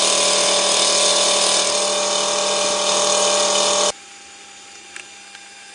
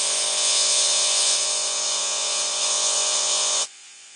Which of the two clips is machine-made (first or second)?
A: second